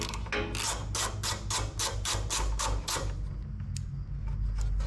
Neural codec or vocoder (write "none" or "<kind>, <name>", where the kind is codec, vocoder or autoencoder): none